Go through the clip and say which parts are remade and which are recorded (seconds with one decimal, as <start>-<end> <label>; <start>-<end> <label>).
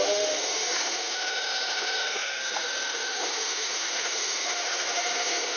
0.0-5.6 remade